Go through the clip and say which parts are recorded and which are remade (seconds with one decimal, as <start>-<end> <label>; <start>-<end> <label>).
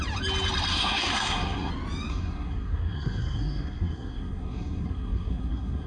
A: 0.0-0.7 recorded; 0.7-1.7 remade; 1.7-2.1 recorded; 2.1-5.9 remade